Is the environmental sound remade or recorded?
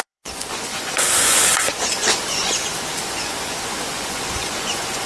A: remade